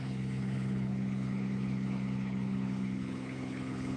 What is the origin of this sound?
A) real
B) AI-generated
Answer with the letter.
B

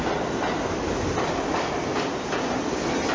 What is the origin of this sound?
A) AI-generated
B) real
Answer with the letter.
B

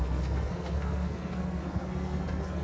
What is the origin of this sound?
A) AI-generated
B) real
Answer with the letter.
A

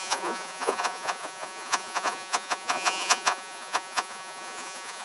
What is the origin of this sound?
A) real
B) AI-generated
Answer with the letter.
B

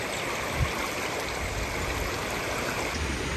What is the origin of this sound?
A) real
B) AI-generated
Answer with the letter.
A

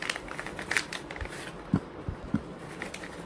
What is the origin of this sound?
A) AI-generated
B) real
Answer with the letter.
B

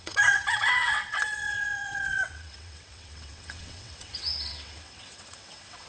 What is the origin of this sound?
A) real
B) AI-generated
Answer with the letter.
B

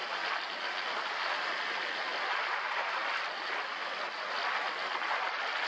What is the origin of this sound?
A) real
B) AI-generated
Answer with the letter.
A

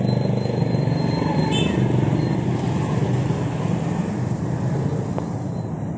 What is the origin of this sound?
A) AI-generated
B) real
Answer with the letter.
B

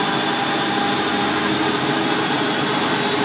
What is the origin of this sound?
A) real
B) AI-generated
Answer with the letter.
A